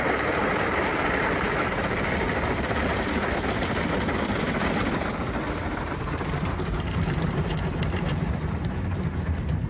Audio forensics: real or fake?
fake